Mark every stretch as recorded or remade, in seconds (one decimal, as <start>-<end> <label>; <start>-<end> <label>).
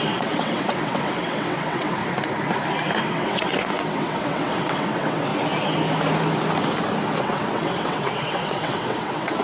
0.0-2.0 remade; 2.0-3.0 recorded; 3.0-5.3 remade; 5.3-7.2 recorded; 7.2-9.4 remade